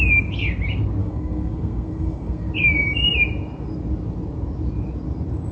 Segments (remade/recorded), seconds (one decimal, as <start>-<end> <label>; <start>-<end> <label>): 0.0-1.0 recorded; 1.0-2.5 remade; 2.5-5.5 recorded